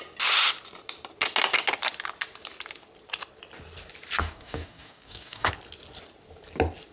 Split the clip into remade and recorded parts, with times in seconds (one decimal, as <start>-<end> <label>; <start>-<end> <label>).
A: 0.0-4.2 recorded; 4.2-5.5 remade; 5.5-6.9 recorded